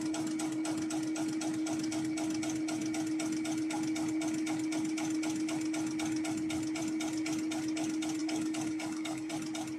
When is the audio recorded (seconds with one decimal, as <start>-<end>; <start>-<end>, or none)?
0.0-8.2; 9.3-9.8